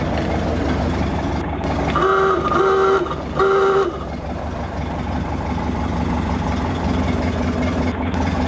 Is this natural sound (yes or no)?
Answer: yes